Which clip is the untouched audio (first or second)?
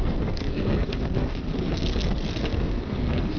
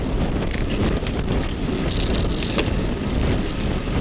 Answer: second